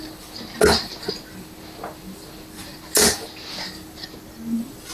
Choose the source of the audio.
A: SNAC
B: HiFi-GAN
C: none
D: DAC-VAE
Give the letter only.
C